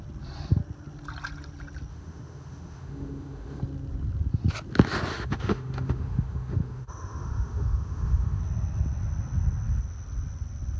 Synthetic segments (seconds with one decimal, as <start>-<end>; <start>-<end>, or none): 1.9-3.6; 5.1-8.4